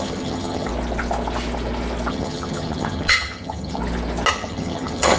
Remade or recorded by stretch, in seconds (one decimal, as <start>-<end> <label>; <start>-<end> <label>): 0.0-0.7 remade; 0.7-2.1 recorded; 2.1-3.8 remade; 3.8-4.3 recorded; 4.3-5.2 remade

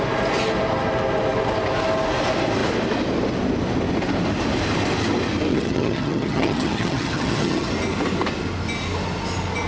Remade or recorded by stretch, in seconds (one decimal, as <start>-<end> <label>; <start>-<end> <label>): 0.0-5.5 recorded; 5.5-7.7 remade; 7.7-9.7 recorded

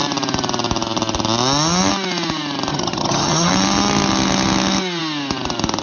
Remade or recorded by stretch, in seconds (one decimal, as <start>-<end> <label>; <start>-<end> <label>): 0.0-2.7 recorded; 2.7-3.5 remade; 3.5-5.8 recorded

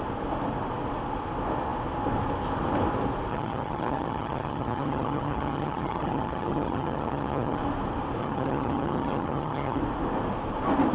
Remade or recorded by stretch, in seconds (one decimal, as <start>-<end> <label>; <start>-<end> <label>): 0.0-3.3 recorded; 3.3-7.6 remade; 7.6-8.2 recorded; 8.2-9.8 remade; 9.8-10.9 recorded